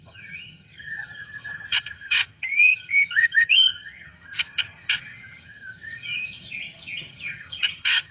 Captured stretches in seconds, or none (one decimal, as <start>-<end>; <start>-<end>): none